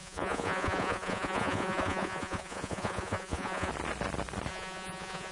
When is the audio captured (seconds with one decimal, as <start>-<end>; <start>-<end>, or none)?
3.7-4.5